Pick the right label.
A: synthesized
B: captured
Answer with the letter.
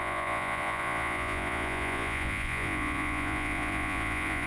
A